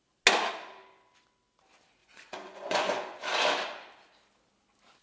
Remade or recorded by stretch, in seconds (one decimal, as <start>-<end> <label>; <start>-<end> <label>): 0.0-2.0 recorded; 2.0-3.3 remade; 3.3-5.0 recorded